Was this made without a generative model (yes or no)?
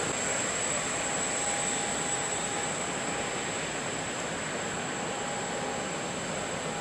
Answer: yes